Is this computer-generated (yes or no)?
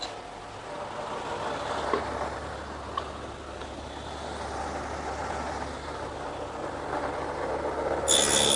no